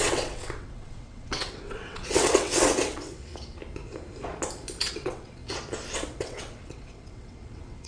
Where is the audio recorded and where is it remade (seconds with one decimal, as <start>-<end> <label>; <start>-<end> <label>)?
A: 0.0-3.3 remade; 3.3-4.9 recorded; 4.9-5.4 remade; 5.4-6.2 recorded; 6.2-7.9 remade